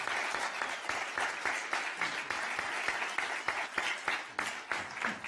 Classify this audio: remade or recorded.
recorded